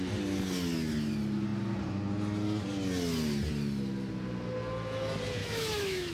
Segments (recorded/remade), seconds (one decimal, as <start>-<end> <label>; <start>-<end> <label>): 0.0-5.4 recorded; 5.4-6.1 remade